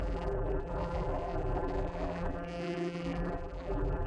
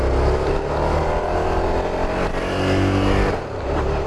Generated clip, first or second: first